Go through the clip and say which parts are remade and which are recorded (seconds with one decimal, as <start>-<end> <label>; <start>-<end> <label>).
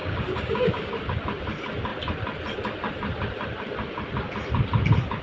0.0-1.0 remade; 1.0-5.2 recorded